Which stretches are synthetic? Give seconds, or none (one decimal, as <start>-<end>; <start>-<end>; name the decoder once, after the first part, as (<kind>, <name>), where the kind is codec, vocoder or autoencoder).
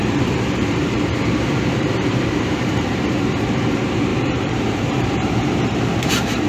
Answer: 0.0-6.5 (vocoder, BigVGAN v2)